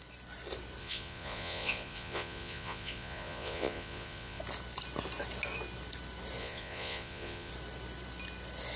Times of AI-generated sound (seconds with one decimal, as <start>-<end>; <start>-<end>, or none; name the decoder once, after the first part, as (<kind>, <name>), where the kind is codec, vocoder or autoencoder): 0.8-4.4 (vocoder, Vocos); 6.4-7.5